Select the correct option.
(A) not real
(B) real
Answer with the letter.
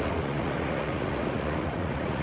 A